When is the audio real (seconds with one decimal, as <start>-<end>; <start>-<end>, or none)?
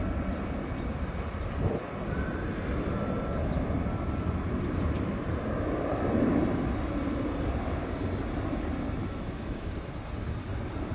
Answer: 0.0-9.0; 9.8-10.9